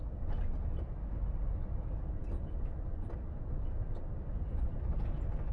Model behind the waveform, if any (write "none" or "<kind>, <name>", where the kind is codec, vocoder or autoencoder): none